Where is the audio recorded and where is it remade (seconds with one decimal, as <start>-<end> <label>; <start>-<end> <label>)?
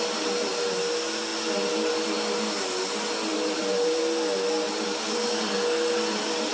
0.0-3.3 recorded; 3.3-4.0 remade; 4.0-6.5 recorded